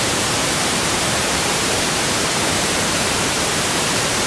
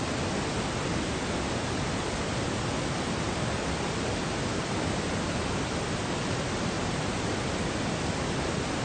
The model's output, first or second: first